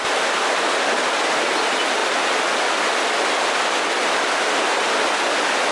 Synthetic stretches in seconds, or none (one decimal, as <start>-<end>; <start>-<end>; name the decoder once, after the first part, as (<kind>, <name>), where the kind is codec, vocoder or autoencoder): none